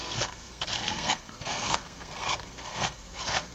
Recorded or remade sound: remade